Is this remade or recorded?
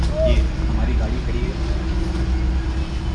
recorded